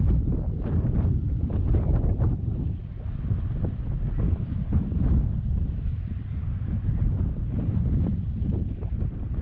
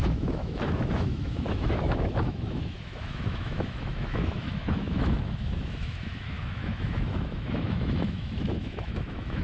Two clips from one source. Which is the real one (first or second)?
first